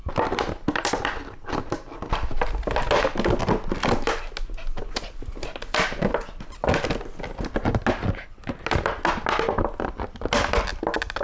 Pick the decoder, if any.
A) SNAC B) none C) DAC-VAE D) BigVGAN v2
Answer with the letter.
B